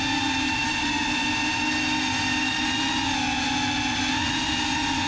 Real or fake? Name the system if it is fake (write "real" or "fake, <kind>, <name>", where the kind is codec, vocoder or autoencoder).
real